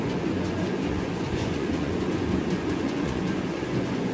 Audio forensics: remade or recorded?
remade